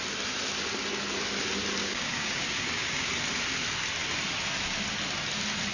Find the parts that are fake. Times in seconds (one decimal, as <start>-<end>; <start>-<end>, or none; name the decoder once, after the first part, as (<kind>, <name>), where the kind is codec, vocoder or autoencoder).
1.8-3.1 (codec, DAC)